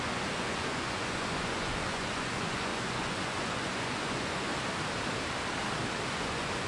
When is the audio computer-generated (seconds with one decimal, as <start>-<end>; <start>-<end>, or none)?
0.0-4.5; 6.1-6.7